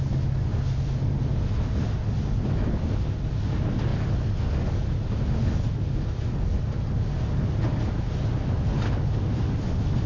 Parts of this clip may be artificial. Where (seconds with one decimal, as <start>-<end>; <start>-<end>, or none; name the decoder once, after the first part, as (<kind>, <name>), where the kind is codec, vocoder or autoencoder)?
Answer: none